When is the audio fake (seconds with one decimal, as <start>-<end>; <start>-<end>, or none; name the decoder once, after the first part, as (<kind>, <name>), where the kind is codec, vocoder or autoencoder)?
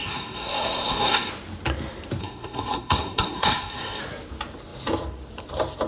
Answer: 0.0-1.3 (codec, SNAC); 2.2-4.0